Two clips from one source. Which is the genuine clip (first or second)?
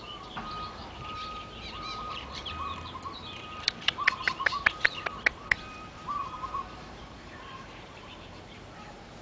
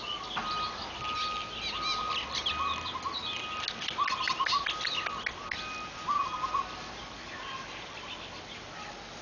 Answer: second